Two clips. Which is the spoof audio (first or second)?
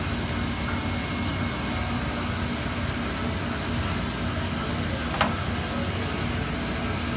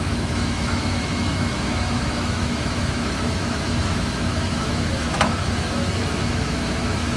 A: second